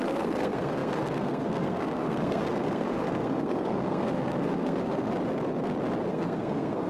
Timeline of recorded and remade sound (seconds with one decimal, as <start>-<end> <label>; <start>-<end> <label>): 0.0-5.1 remade; 5.1-6.1 recorded; 6.1-6.9 remade

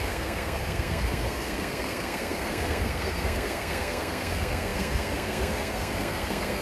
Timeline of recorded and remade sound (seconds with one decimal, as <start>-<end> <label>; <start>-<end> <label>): 0.0-6.6 remade

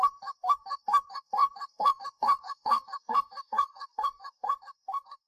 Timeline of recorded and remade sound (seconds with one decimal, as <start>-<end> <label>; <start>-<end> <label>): 0.0-5.3 remade

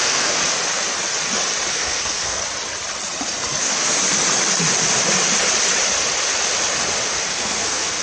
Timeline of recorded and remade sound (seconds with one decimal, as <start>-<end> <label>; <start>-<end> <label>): 0.0-0.4 remade; 0.4-1.7 recorded; 1.7-2.4 remade; 2.4-3.6 recorded; 3.6-4.0 remade; 4.0-7.3 recorded; 7.3-8.0 remade

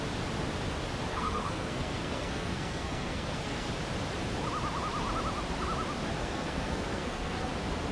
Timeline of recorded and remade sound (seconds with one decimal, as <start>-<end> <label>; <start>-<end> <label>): 0.0-1.1 recorded; 1.1-3.7 remade; 3.7-6.2 recorded; 6.2-7.5 remade; 7.5-7.9 recorded

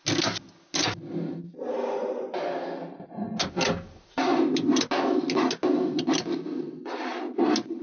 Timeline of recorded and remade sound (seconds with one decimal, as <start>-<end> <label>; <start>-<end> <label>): 0.0-7.8 recorded

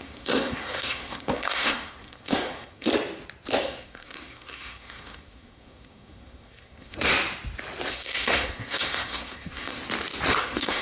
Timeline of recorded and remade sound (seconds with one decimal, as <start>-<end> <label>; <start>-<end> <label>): 0.0-2.9 remade; 2.9-3.6 recorded; 3.6-7.1 remade; 7.1-7.9 recorded; 7.9-9.8 remade; 9.8-10.4 recorded; 10.4-10.8 remade